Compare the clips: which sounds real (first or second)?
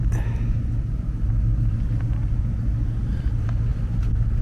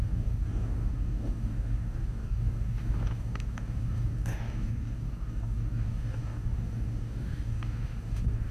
first